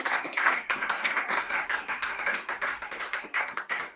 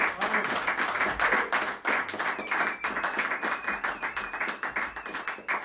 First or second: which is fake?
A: first